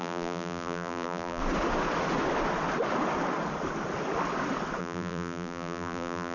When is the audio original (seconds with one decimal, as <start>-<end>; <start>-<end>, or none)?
1.4-4.8